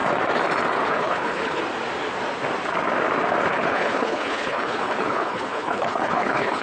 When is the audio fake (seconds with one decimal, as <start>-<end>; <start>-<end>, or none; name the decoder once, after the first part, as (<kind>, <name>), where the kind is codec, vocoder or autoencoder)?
0.9-1.6 (codec, HILCodec); 3.5-6.6

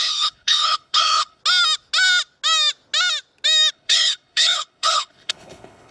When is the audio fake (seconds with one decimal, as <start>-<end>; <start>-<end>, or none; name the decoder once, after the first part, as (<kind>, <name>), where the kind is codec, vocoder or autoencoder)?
0.0-1.4 (codec, HILCodec); 3.7-5.9

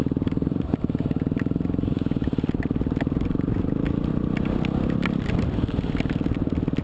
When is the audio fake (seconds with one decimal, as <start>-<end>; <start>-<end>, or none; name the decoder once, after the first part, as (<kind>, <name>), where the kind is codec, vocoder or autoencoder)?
none

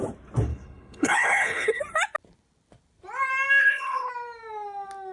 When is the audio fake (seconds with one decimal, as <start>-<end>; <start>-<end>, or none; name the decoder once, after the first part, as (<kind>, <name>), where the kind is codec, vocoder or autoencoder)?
0.5-1.8 (codec, HILCodec); 3.6-4.1